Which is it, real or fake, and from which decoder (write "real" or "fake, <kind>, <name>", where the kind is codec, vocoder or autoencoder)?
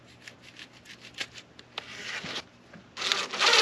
real